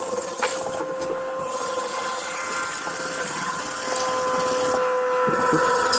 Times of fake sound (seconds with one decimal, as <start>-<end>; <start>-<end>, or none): 0.0-0.5; 1.4-2.4; 3.2-3.6; 5.3-6.0

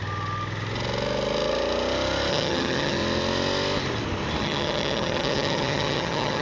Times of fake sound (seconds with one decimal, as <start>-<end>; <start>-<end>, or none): 2.3-3.0; 4.4-6.4